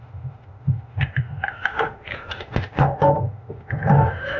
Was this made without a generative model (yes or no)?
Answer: no